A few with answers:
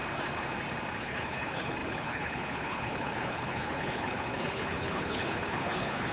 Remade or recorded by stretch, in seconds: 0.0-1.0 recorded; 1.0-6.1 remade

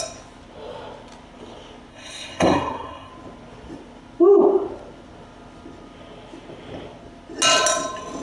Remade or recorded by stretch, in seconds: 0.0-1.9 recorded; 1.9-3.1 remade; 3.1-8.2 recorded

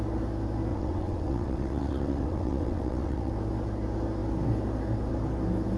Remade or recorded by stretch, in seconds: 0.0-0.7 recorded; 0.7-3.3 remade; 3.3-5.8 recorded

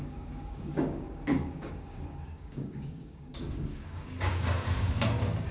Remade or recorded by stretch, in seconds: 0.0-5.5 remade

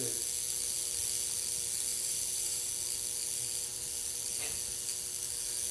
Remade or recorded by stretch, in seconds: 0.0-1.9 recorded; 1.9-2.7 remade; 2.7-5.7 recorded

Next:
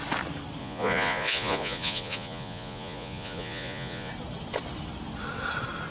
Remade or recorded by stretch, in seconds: 0.0-0.6 recorded; 0.6-4.1 remade; 4.1-5.9 recorded

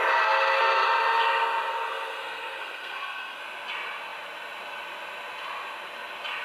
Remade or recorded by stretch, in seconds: 0.0-1.7 recorded; 1.7-3.4 remade; 3.4-6.4 recorded

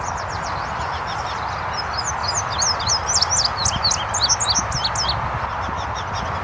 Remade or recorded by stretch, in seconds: 0.0-6.4 recorded